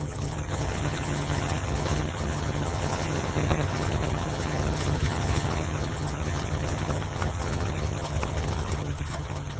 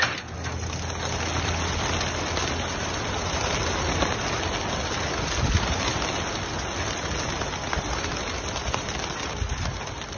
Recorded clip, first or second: second